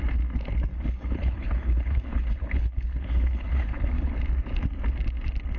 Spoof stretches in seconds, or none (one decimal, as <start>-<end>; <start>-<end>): 0.7-4.1